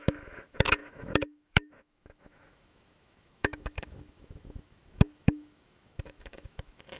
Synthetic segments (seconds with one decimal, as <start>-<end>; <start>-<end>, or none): 0.0-7.0